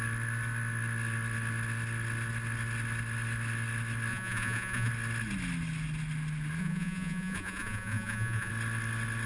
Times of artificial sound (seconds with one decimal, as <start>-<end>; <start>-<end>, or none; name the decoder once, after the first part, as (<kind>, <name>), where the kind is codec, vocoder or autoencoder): 4.1-4.9 (vocoder, Vocos); 6.6-8.5